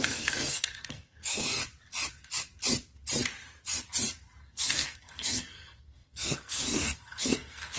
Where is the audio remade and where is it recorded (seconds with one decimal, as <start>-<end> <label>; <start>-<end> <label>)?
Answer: 0.0-1.6 remade; 1.6-4.5 recorded; 4.5-7.8 remade